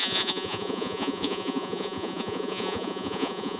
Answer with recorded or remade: remade